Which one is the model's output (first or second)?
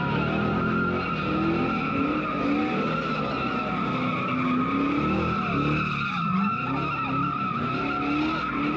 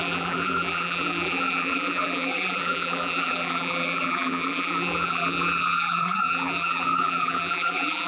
second